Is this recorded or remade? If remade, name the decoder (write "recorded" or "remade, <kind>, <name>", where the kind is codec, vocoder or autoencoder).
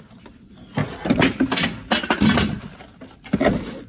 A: recorded